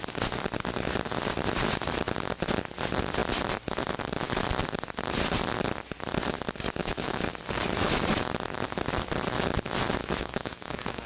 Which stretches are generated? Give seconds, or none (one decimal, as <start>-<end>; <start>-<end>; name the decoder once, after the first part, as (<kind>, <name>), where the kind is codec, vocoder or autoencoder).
6.8-7.3 (autoencoder, DAC-VAE); 10.0-11.1